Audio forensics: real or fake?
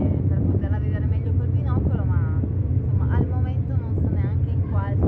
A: real